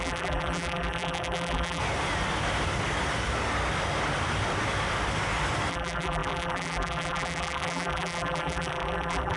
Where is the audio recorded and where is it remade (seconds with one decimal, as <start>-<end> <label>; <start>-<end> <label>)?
0.0-1.8 remade; 1.8-5.7 recorded; 5.7-9.4 remade